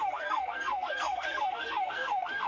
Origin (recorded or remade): remade